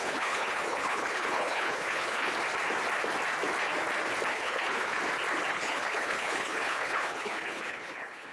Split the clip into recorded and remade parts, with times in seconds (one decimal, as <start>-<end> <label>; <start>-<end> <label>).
0.0-2.3 remade; 2.3-4.3 recorded; 4.3-5.0 remade; 5.0-5.5 recorded; 5.5-8.3 remade